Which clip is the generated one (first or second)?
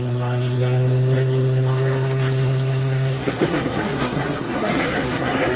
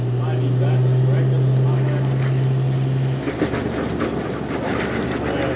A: first